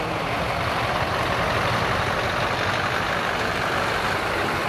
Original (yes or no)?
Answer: yes